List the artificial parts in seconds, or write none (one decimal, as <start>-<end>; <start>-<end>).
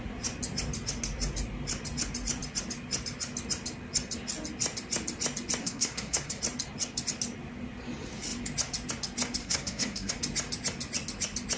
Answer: 5.6-6.4; 9.4-10.1